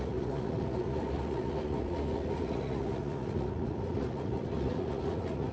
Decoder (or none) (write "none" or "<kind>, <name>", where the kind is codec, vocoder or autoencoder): vocoder, Vocos